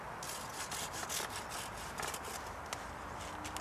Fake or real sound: real